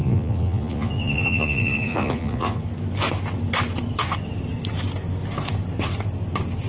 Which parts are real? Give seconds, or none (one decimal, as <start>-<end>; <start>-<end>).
2.6-6.7